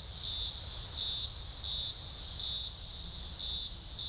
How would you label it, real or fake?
real